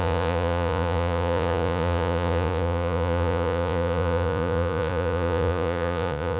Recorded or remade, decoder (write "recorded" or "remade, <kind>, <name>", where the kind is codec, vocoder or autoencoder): remade, vocoder, Vocos